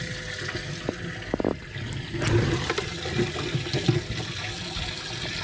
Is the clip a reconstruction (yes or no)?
no